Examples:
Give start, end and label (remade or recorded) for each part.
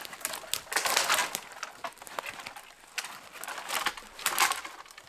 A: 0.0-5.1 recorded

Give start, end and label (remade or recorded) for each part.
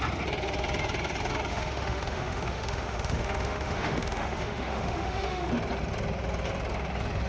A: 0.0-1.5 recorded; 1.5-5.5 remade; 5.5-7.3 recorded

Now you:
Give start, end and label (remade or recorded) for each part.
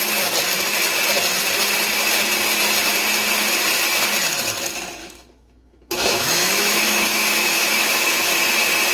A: 0.0-5.0 recorded; 5.0-8.3 remade; 8.3-8.9 recorded